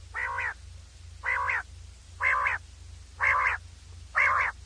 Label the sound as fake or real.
real